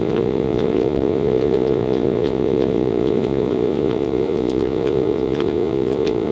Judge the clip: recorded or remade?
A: remade